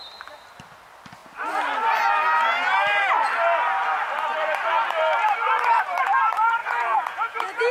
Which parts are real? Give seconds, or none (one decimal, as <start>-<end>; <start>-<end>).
0.0-6.6